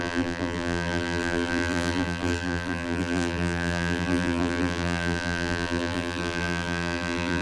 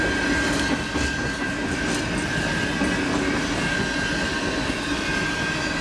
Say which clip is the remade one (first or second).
first